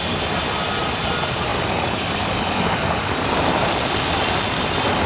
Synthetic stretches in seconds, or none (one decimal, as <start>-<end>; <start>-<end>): 1.5-3.2